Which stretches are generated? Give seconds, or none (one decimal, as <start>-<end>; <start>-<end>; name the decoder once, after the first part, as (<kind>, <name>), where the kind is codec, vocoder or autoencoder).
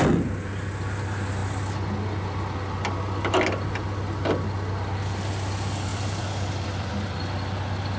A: 5.9-6.9 (vocoder, BigVGAN v2)